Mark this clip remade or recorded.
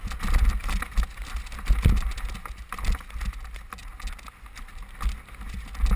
recorded